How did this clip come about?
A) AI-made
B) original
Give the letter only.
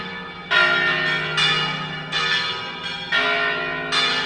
B